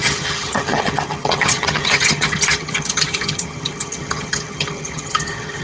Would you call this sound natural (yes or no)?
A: no